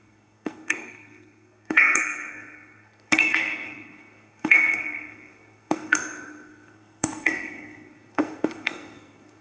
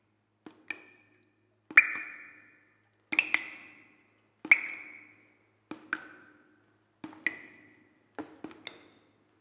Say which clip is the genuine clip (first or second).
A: second